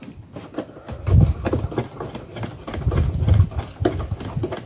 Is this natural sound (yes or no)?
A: yes